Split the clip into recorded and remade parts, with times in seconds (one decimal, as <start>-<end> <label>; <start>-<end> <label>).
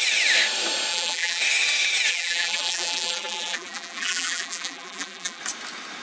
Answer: 0.0-0.9 recorded; 0.9-1.4 remade; 1.4-2.1 recorded; 2.1-5.4 remade; 5.4-6.0 recorded